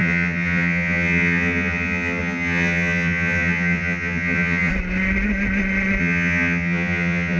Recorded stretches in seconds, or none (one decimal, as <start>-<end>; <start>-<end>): 4.7-6.0

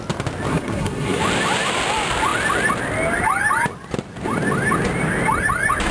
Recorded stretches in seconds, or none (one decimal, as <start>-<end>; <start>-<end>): 0.0-0.5; 1.2-5.9

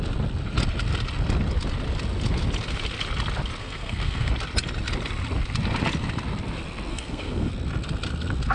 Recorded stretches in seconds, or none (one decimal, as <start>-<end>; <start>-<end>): 0.0-3.6; 4.3-6.9; 7.5-8.5

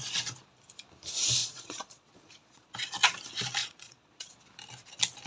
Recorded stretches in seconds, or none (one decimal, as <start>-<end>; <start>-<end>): 0.0-1.4; 2.7-3.6; 4.3-5.3

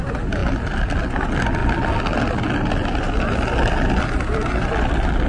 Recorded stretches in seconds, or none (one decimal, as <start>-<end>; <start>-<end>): 0.0-5.3